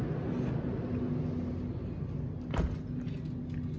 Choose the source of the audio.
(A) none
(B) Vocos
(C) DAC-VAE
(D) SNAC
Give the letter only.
A